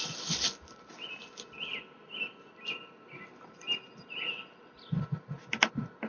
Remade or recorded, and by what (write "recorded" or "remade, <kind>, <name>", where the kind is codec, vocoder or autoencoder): recorded